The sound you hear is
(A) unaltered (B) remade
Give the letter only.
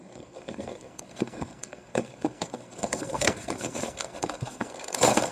B